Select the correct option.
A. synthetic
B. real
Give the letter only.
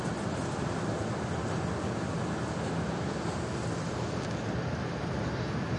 B